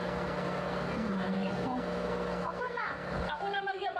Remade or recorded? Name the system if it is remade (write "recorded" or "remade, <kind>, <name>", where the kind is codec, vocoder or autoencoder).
remade, codec, SNAC